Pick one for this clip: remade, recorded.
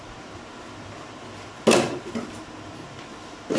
recorded